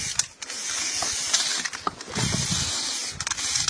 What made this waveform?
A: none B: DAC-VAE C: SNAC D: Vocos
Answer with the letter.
A